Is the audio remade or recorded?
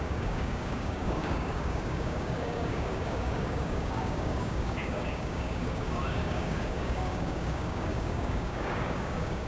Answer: remade